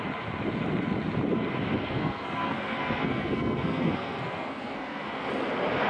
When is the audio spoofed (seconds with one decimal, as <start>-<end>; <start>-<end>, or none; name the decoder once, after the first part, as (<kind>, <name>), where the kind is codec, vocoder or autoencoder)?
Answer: 1.8-5.3 (codec, SNAC)